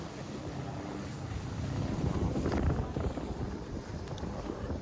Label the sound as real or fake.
fake